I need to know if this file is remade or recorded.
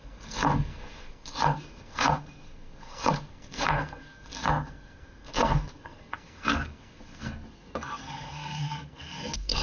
remade